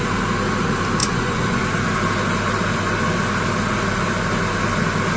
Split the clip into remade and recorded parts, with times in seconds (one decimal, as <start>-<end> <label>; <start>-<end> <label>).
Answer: 0.0-1.0 recorded; 1.0-1.6 remade; 1.6-5.2 recorded